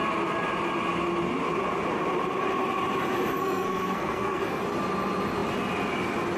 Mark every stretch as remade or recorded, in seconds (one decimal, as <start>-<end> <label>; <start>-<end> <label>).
0.0-3.4 recorded; 3.4-4.6 remade; 4.6-6.4 recorded